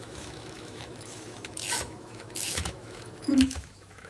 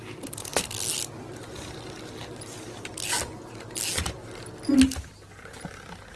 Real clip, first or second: second